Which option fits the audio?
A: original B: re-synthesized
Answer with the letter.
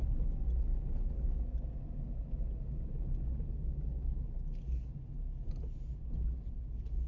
A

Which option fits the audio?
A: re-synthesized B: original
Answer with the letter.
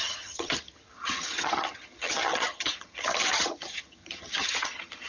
A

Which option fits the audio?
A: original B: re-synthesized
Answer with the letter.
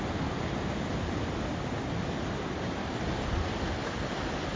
A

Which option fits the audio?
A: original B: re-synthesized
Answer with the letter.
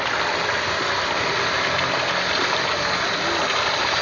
A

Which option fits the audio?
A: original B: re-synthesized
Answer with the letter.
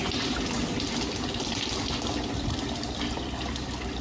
A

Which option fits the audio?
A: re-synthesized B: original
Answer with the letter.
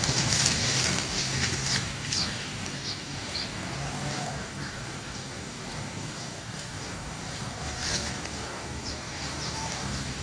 A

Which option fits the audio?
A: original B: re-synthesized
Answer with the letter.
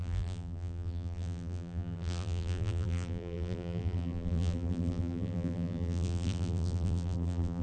B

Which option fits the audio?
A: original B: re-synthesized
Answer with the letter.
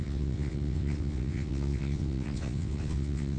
B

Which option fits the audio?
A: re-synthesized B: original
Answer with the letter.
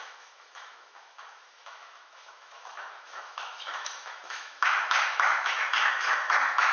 A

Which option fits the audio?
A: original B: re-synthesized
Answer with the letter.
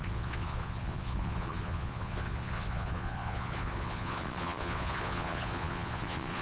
B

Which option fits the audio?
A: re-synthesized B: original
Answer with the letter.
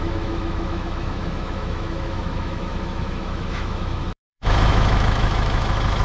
A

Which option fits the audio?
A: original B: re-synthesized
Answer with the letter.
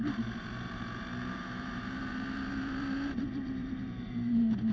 B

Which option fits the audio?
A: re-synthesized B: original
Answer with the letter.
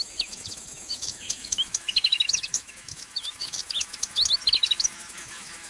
A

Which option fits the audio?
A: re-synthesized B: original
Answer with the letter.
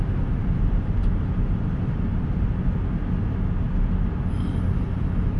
B